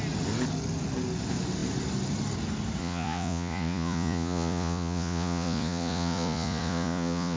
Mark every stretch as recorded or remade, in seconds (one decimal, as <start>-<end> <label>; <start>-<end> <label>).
0.0-2.8 recorded; 2.8-7.4 remade